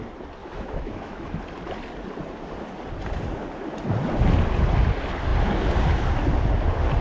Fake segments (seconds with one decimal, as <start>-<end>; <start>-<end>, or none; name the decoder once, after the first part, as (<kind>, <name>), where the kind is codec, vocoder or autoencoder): 0.4-1.4 (autoencoder, DAC-VAE)